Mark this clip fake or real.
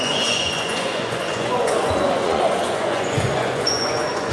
fake